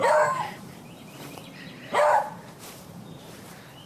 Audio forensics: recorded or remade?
remade